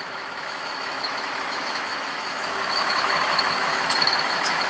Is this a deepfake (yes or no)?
yes